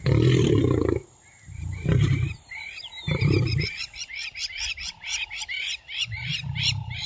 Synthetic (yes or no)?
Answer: yes